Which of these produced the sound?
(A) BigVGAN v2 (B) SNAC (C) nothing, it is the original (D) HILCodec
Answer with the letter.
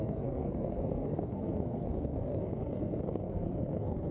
B